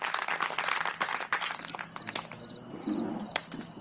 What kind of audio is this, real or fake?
real